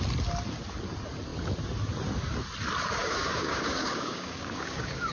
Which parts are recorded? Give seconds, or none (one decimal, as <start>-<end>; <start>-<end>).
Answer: 0.0-3.0